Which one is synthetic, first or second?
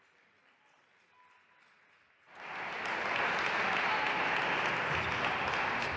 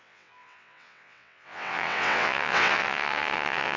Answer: second